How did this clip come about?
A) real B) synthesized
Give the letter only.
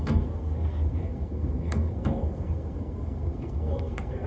B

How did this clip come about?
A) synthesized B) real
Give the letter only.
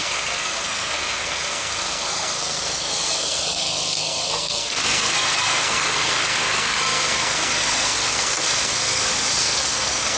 A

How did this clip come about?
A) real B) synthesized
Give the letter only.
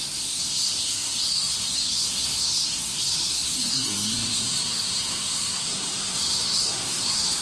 B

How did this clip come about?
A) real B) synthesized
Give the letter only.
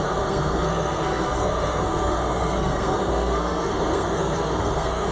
B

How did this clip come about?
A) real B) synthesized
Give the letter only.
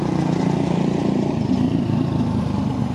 A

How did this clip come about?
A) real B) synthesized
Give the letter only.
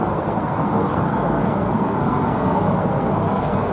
B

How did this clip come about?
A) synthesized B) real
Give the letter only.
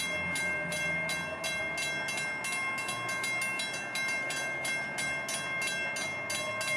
B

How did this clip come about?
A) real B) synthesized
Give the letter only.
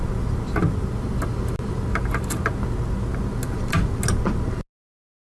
A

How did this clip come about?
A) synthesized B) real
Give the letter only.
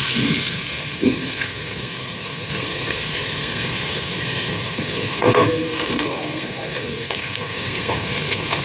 A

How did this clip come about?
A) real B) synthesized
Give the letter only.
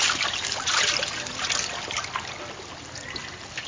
A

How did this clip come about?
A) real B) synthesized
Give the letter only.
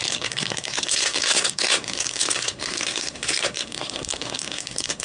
B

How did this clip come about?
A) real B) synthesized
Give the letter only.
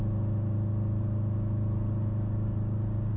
A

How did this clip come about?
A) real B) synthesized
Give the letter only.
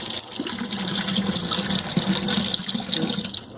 A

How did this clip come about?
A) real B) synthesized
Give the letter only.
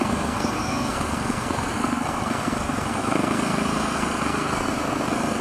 B